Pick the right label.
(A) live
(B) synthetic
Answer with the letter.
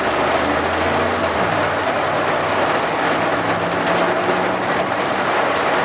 A